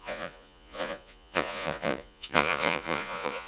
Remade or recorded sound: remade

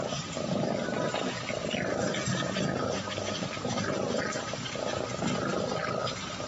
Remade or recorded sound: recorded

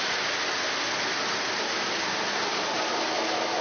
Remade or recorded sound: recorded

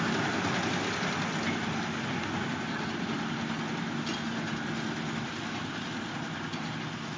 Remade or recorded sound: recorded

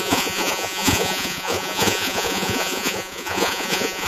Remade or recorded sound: remade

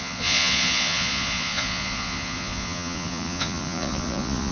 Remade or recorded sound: remade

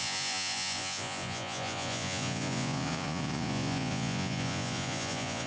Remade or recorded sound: remade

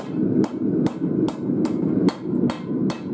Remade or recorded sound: recorded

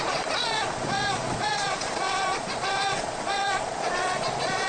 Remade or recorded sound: remade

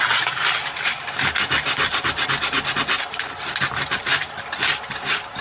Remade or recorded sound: recorded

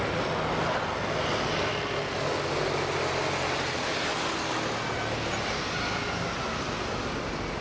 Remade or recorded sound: recorded